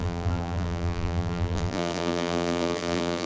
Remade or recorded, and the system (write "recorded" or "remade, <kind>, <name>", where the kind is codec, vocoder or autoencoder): remade, vocoder, BigVGAN v2